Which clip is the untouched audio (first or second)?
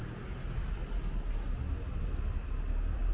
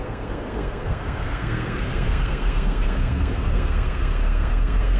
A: first